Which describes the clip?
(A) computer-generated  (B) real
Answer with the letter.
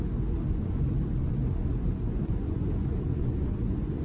A